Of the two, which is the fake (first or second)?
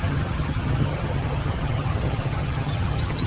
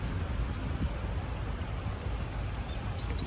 first